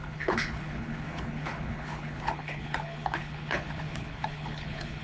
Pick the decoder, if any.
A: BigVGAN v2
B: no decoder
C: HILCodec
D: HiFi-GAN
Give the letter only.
C